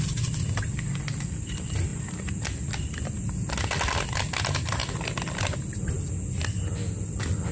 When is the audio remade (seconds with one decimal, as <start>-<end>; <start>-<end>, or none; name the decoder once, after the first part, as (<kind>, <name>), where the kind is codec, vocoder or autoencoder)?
none

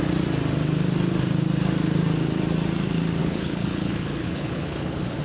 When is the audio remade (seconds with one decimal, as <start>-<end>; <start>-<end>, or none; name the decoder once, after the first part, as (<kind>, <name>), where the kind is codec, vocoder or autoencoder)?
3.2-5.2 (codec, HILCodec)

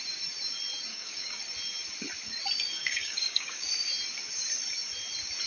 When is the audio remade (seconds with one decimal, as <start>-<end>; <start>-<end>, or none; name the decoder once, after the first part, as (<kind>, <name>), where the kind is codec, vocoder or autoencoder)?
0.9-1.4 (codec, DAC); 2.7-3.7

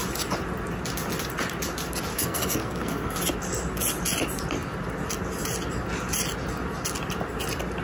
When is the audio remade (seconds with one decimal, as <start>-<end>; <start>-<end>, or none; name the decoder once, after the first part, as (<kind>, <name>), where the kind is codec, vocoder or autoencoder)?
2.1-3.2 (codec, SNAC)

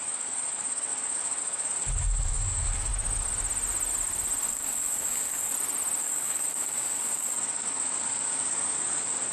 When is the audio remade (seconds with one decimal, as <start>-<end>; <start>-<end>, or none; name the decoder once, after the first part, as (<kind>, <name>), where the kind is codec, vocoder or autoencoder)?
0.0-2.9 (codec, DAC); 4.5-5.5; 6.0-9.3

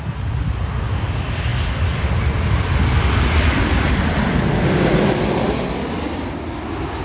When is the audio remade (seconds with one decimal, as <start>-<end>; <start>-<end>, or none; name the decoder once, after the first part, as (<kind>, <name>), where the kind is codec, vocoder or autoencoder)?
none

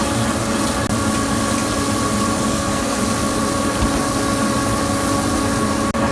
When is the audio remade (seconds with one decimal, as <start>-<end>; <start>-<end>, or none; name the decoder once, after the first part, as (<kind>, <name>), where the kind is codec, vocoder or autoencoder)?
2.5-3.0 (codec, SNAC)